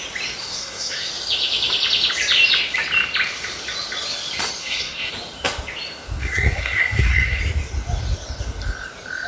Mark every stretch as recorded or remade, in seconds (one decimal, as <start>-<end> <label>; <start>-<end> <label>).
0.0-0.4 recorded; 0.4-1.1 remade; 1.1-4.6 recorded; 4.6-5.1 remade; 5.1-6.2 recorded; 6.2-7.4 remade; 7.4-9.3 recorded